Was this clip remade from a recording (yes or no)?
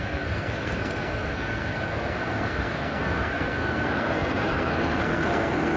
yes